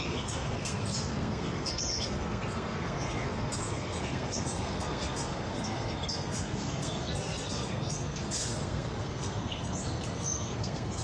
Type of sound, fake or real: fake